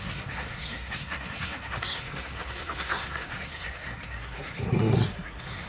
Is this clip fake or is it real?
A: fake